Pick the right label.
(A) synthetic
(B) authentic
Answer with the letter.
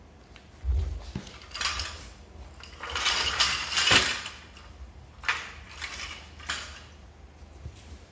B